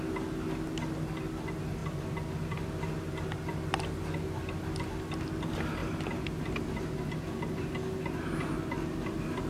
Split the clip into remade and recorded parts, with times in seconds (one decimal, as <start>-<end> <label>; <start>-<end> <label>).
0.0-9.5 recorded